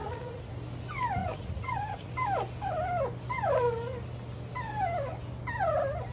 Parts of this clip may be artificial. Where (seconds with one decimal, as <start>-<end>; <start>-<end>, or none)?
0.0-0.5; 1.2-2.1